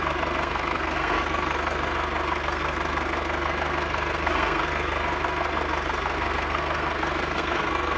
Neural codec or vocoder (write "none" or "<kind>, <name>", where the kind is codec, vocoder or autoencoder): codec, SNAC